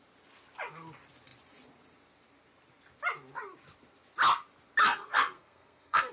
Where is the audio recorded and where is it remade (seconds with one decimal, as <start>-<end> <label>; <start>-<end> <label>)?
0.0-4.8 recorded; 4.8-6.1 remade